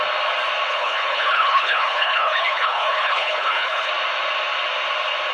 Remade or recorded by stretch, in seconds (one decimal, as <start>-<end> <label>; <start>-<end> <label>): 0.0-0.7 recorded; 0.7-3.9 remade; 3.9-5.3 recorded